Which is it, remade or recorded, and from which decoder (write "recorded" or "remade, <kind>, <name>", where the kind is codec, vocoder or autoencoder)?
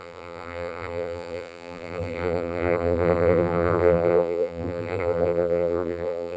remade, vocoder, BigVGAN v2